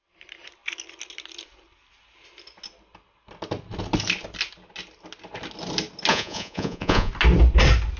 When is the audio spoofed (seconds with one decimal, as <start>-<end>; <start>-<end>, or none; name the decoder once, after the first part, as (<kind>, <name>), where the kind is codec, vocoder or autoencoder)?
6.1-7.1 (vocoder, Vocos)